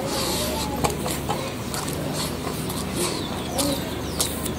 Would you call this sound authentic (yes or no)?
yes